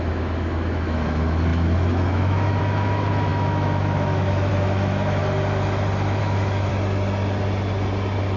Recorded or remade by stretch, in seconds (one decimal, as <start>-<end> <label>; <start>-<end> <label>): 0.0-5.2 remade; 5.2-6.2 recorded; 6.2-6.7 remade; 6.7-8.4 recorded